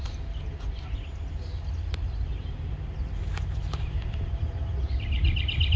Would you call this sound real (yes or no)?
yes